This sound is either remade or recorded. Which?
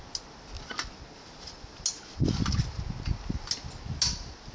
recorded